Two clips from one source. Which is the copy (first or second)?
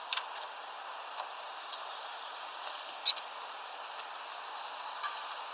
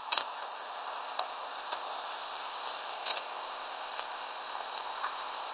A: second